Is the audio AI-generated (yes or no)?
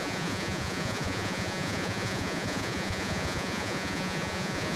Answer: yes